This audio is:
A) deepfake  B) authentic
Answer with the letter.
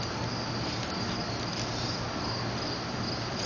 B